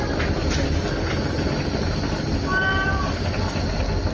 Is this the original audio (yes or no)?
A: yes